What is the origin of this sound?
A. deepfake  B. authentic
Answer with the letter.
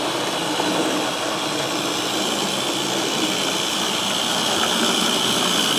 B